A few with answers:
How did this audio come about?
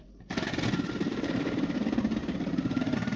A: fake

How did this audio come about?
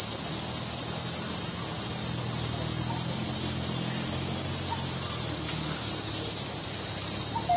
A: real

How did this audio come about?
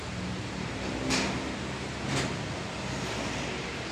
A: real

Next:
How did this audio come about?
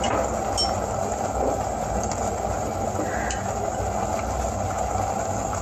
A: real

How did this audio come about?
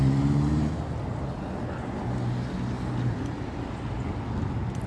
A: real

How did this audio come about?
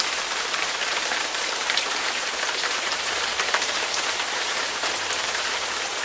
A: fake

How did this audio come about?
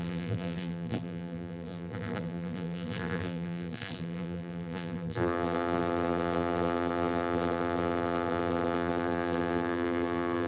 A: fake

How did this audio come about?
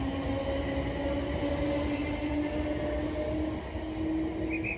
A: real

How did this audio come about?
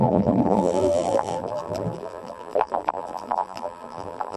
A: fake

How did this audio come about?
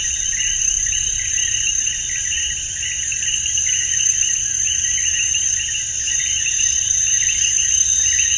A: fake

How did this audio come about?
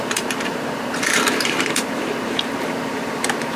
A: fake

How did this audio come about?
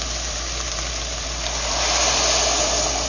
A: fake